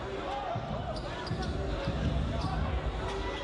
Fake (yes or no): no